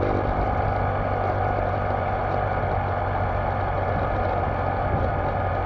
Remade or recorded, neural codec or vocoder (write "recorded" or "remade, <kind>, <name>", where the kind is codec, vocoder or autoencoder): recorded